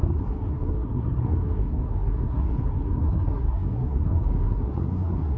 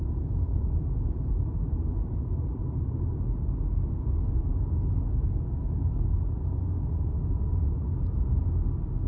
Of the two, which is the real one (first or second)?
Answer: second